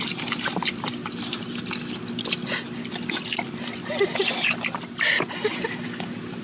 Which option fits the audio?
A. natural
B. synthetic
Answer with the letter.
A